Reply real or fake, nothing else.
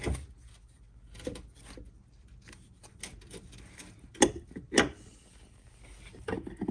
real